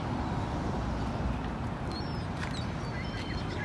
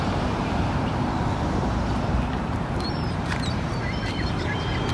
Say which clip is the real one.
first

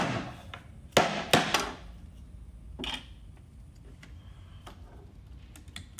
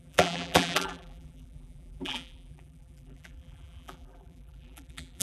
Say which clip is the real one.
first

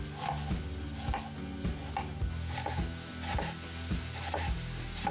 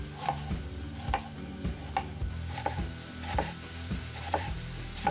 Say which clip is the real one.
first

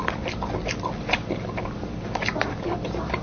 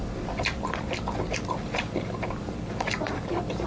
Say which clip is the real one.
first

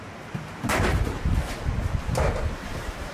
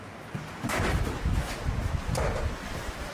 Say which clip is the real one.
second